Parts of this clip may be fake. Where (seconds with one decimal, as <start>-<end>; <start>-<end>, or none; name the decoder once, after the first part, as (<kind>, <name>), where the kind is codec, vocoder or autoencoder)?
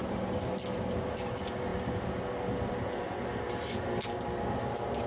none